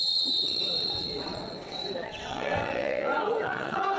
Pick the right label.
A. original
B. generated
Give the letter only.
B